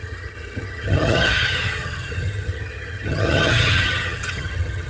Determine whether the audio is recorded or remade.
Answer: remade